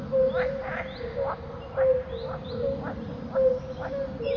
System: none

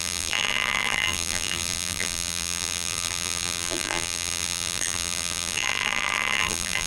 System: vocoder, BigVGAN v2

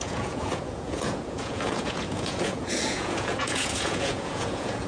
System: vocoder, Vocos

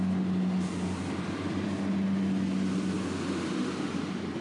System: none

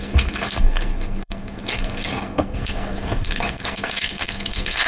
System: codec, SNAC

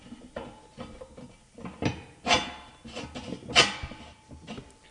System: none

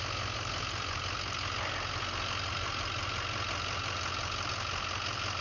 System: none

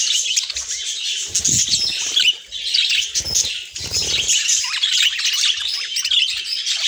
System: none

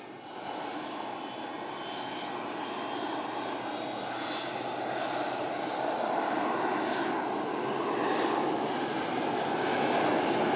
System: none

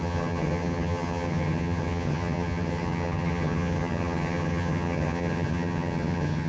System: vocoder, HiFi-GAN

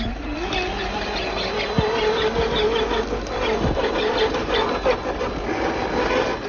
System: none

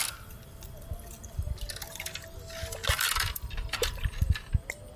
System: none